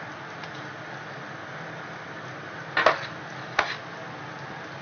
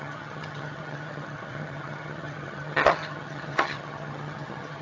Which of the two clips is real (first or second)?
first